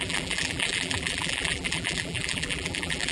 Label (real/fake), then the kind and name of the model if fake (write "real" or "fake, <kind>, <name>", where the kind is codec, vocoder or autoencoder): fake, vocoder, BigVGAN v2